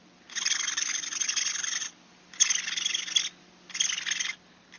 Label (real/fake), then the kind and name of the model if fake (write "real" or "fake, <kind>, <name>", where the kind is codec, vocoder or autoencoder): real